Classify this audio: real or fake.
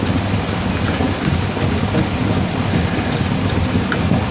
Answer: real